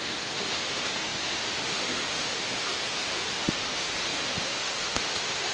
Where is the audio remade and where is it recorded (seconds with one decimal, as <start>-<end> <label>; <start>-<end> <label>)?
0.0-5.5 remade